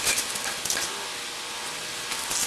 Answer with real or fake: real